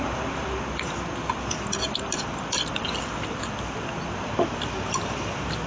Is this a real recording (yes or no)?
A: yes